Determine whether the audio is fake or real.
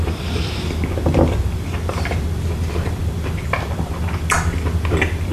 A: real